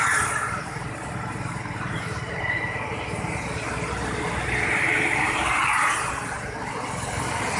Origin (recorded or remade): recorded